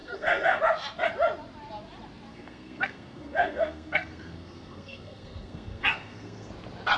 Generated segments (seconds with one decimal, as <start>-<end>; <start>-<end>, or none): 0.0-0.6; 2.3-6.5